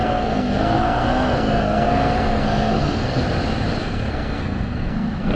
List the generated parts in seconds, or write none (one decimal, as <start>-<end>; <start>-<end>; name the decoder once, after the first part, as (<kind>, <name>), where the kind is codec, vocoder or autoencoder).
0.0-3.2 (codec, SNAC); 3.8-5.4